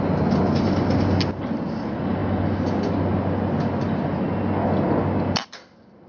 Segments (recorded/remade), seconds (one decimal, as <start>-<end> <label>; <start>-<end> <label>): 0.0-6.1 recorded